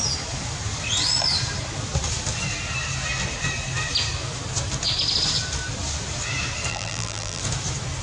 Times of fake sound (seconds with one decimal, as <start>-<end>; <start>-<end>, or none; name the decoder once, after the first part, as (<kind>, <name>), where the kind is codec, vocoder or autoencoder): 6.7-7.4 (vocoder, BigVGAN v2)